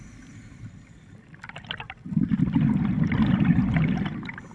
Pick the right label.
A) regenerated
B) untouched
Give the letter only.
A